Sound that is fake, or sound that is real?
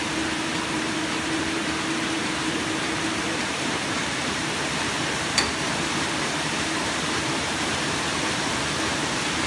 fake